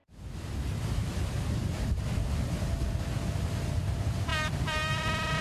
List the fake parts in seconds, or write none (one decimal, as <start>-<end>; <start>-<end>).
4.3-5.0